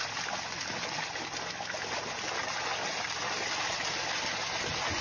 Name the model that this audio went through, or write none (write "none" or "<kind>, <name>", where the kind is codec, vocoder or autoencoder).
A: none